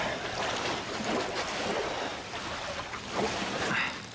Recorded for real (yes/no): no